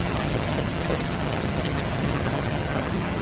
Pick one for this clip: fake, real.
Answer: fake